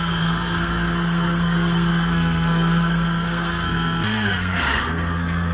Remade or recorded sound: remade